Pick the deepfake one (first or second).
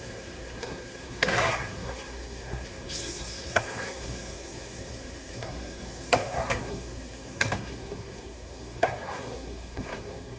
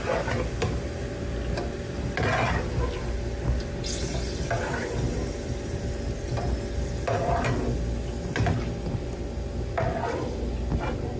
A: first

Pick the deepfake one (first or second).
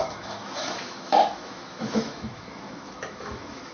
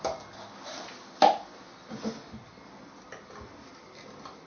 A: first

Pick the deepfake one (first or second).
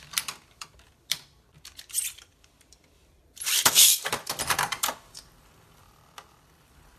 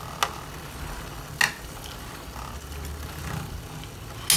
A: first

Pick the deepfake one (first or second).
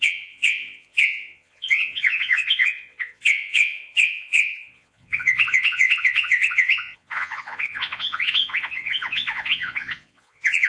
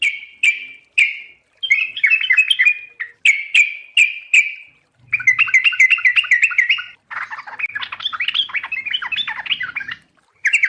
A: first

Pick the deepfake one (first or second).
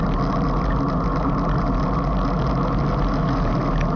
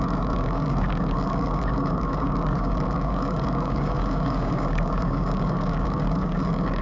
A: second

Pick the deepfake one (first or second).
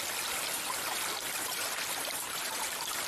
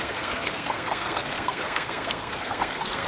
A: second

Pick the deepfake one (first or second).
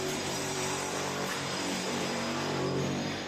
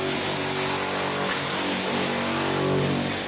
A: first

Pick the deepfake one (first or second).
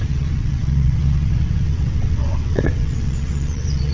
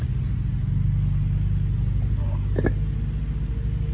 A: first